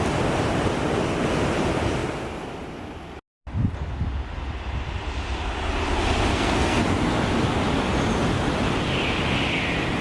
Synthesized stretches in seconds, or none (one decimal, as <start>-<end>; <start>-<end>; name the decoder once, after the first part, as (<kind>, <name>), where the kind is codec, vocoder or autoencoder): 6.3-6.8 (codec, SNAC)